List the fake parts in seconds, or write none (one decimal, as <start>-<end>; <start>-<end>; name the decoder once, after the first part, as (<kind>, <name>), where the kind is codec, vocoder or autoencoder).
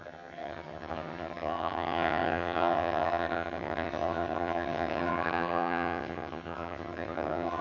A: 0.0-7.6 (vocoder, HiFi-GAN)